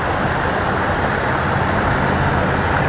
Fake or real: real